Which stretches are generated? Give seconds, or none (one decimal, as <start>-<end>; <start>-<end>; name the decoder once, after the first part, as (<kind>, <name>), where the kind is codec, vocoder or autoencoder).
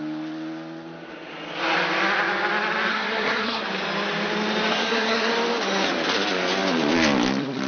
2.9-3.6 (codec, SNAC); 4.7-5.3